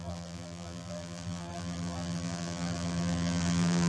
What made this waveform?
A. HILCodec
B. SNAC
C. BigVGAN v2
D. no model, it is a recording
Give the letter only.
C